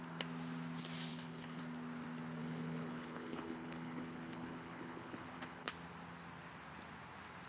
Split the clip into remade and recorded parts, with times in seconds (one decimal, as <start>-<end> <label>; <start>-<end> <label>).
0.0-1.1 recorded; 1.1-1.6 remade; 1.6-2.4 recorded; 2.4-5.7 remade; 5.7-7.5 recorded